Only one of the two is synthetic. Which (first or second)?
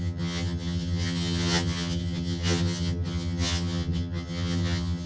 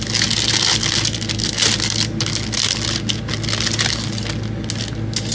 first